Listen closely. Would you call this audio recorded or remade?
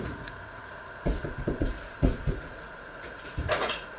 remade